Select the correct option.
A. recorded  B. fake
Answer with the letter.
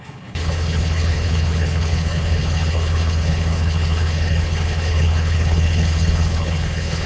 B